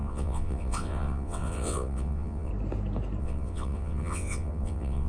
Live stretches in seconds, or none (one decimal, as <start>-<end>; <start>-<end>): 2.5-3.2